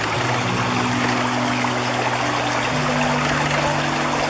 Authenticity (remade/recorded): recorded